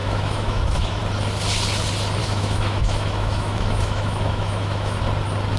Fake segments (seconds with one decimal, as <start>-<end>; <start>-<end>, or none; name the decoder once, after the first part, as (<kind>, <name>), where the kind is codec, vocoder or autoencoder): 0.0-1.0 (autoencoder, DAC-VAE); 2.2-5.0